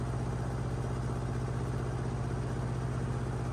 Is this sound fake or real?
real